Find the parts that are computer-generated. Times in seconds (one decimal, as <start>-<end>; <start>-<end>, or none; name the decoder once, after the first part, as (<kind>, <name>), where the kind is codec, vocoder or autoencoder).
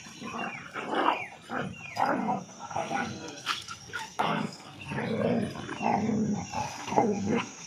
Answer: 2.2-5.0 (codec, SNAC); 6.6-7.7